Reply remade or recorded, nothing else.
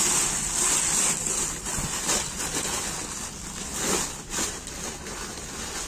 recorded